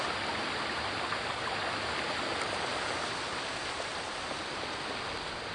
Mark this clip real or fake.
real